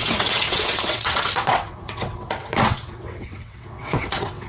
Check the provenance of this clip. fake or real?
fake